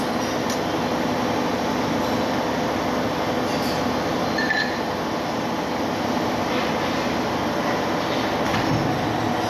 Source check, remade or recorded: recorded